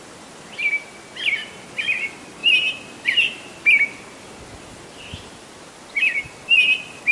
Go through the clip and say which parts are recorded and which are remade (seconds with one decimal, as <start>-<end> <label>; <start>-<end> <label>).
0.0-7.1 recorded